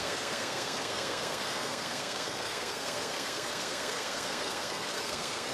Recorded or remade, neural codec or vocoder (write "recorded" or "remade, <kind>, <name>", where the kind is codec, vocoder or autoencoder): remade, codec, SNAC